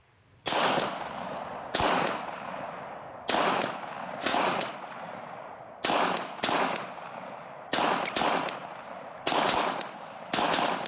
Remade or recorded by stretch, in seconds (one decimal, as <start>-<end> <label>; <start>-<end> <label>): 0.0-4.3 recorded; 4.3-5.7 remade; 5.7-10.9 recorded